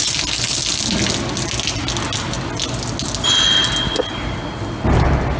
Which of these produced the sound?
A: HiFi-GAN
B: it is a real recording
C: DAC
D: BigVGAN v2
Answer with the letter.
B